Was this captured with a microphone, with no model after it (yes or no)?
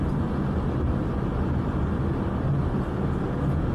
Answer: yes